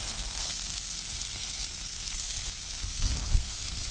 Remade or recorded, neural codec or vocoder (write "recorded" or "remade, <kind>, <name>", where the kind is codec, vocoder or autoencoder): remade, codec, SNAC